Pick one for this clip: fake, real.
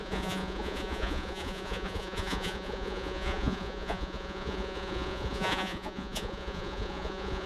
fake